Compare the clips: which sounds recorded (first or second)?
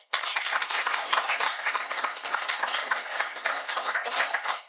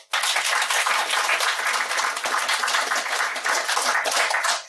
second